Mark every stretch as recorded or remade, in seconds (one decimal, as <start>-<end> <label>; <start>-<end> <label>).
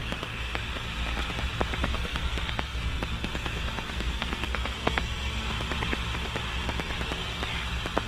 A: 0.0-0.6 remade; 0.6-1.8 recorded; 1.8-5.5 remade; 5.5-8.1 recorded